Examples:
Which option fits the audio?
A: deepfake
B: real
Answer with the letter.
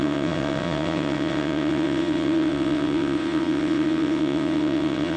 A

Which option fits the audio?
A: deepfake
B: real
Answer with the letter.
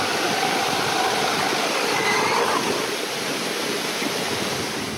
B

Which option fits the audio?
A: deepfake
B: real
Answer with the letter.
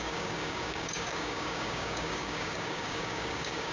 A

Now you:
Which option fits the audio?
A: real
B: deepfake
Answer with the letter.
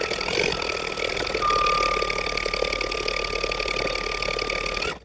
A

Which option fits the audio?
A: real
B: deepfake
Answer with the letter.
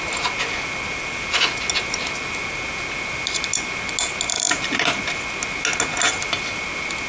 A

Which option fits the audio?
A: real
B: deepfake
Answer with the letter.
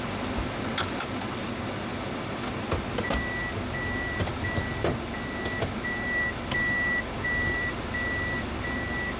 A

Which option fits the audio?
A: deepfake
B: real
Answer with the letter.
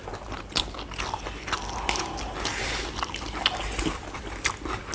B